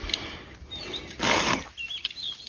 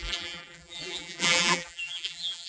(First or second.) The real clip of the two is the first